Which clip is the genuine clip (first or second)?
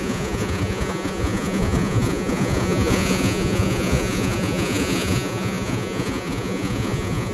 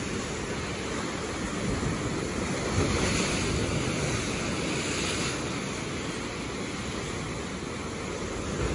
second